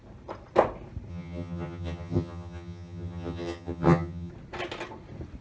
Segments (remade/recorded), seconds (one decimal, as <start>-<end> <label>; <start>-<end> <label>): 0.0-1.1 recorded; 1.1-4.3 remade; 4.3-5.4 recorded